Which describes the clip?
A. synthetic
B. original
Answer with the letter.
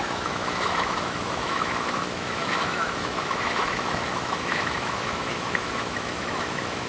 A